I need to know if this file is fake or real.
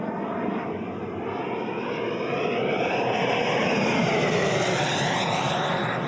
real